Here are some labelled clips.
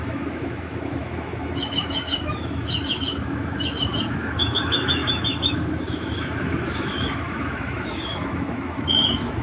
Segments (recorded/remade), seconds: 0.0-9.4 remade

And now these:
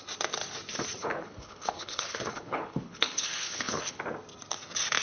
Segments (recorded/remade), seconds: 0.0-1.0 recorded; 1.0-4.0 remade; 4.0-5.0 recorded

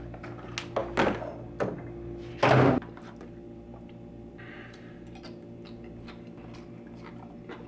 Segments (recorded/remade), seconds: 0.0-7.7 recorded

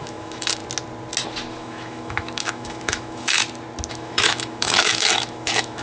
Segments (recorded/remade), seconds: 0.0-0.6 remade; 0.6-1.5 recorded; 1.5-3.4 remade; 3.4-3.9 recorded; 3.9-5.8 remade

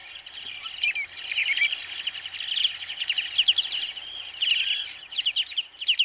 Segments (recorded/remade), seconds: 0.0-0.6 remade; 0.6-6.0 recorded

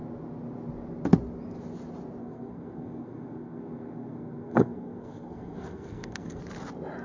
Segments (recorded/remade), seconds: 0.0-2.2 recorded; 2.2-6.4 remade; 6.4-7.0 recorded

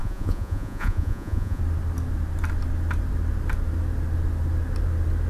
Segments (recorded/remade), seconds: 0.0-1.6 remade; 1.6-5.3 recorded